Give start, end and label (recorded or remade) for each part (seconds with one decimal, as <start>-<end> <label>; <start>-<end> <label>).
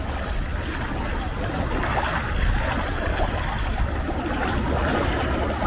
0.0-5.7 recorded